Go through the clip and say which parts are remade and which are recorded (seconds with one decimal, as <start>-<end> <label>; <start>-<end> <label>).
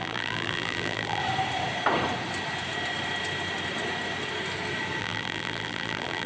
0.0-1.2 remade; 1.2-5.0 recorded; 5.0-6.3 remade